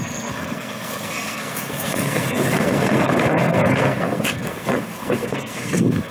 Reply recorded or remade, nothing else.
remade